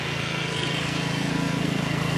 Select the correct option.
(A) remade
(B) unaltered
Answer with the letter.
A